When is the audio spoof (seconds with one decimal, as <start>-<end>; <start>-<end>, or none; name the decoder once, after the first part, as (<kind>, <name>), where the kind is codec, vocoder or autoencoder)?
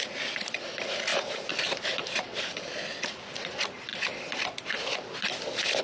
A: 1.1-2.7 (vocoder, BigVGAN v2)